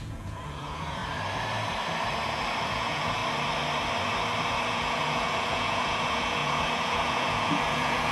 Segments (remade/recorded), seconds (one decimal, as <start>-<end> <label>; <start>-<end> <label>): 0.0-1.0 remade; 1.0-2.6 recorded; 2.6-3.2 remade; 3.2-4.7 recorded; 4.7-8.1 remade